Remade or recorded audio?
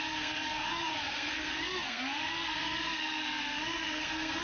remade